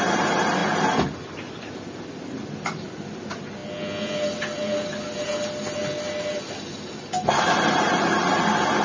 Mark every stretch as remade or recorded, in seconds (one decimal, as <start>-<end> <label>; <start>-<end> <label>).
0.0-8.8 recorded

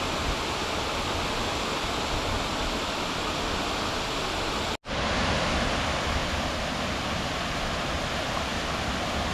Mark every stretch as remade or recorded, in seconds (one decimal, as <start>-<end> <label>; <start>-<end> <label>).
0.0-9.3 recorded